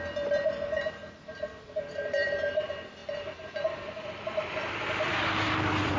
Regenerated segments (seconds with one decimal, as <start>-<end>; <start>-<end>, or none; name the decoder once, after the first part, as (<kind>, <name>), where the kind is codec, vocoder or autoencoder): 0.0-6.0 (vocoder, BigVGAN v2)